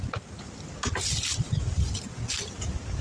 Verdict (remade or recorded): recorded